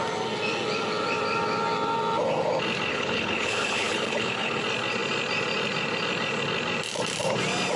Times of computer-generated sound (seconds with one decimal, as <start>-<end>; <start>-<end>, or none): 2.9-4.6